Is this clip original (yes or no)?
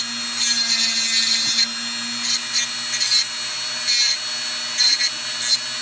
yes